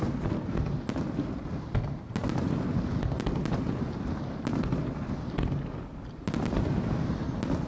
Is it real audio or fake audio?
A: real